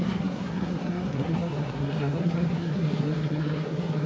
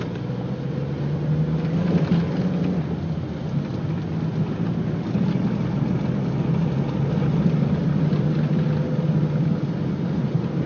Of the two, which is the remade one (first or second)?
first